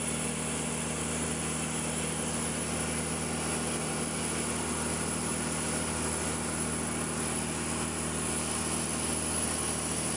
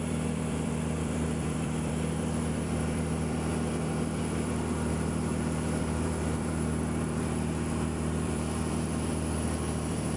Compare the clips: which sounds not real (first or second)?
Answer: second